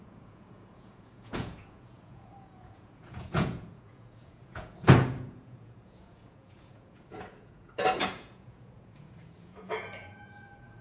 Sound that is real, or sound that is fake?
fake